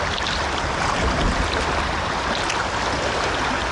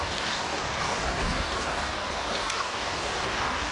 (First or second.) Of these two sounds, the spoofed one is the second